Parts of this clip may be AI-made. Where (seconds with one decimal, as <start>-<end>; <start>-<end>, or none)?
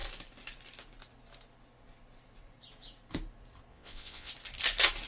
3.7-4.3